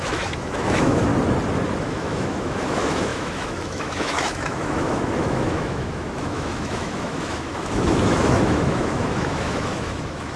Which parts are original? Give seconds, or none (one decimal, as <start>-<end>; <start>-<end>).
1.1-1.8